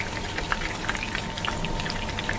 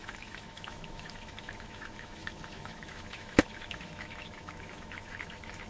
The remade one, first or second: second